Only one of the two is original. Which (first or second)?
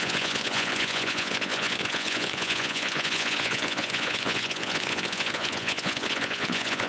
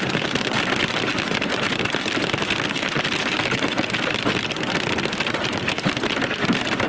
second